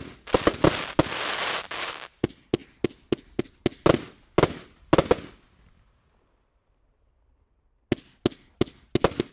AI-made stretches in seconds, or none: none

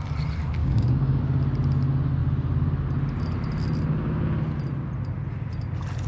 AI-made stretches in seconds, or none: 0.6-1.2 (codec, DAC)

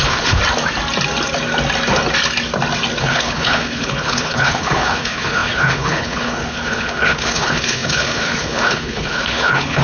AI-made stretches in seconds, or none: 0.0-0.4 (codec, HILCodec); 3.0-9.8

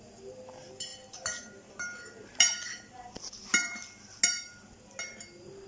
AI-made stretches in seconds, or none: none

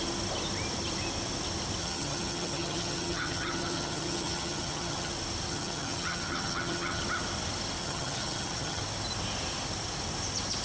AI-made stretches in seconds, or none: 1.8-5.1 (vocoder, HiFi-GAN); 5.5-7.0; 7.8-8.8

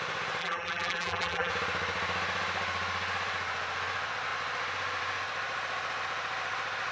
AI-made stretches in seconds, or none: 0.4-1.5 (vocoder, BigVGAN v2)